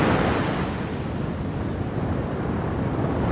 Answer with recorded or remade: recorded